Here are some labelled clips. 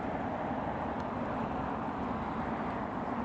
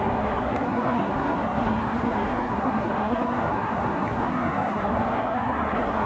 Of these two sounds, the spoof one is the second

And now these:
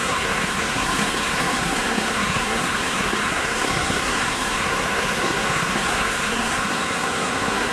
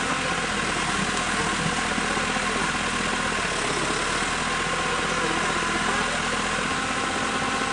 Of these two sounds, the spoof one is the first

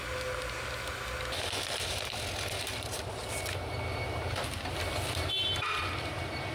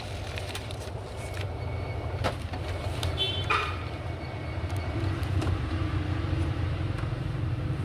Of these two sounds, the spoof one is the second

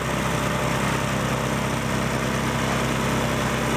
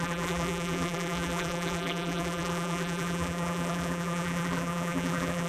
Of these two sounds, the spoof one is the second